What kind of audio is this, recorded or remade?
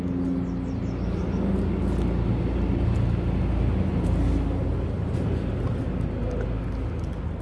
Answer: recorded